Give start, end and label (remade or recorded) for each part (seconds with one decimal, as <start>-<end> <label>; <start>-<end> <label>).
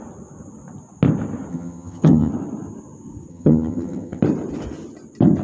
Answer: 0.0-1.5 recorded; 1.5-2.3 remade; 2.3-3.3 recorded; 3.3-4.2 remade; 4.2-5.4 recorded